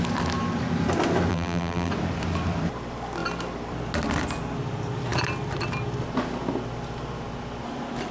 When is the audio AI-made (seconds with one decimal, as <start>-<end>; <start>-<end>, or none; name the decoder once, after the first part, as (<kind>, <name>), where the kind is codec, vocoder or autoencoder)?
1.3-1.9 (vocoder, BigVGAN v2)